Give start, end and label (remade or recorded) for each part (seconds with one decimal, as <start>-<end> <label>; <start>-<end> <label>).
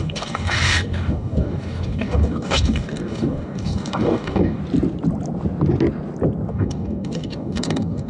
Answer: 0.0-4.6 remade; 4.6-6.5 recorded; 6.5-8.1 remade